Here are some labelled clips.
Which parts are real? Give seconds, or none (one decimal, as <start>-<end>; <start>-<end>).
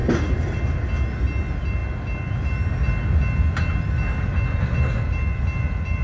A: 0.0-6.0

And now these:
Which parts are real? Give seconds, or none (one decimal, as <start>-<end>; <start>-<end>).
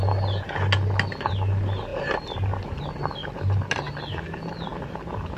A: 0.0-5.4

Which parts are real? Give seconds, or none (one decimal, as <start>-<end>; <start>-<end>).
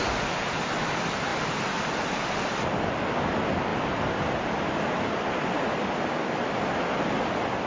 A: 0.0-1.3; 2.9-7.7